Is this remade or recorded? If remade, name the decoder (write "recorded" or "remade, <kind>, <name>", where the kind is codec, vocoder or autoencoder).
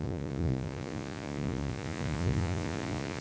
remade, vocoder, Vocos